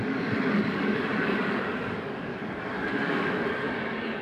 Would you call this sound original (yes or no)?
no